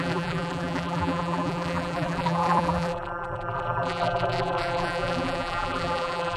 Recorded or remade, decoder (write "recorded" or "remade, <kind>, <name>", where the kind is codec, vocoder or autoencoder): remade, vocoder, BigVGAN v2